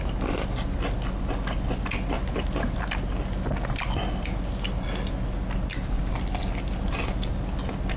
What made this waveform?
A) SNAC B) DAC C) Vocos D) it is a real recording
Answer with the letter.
D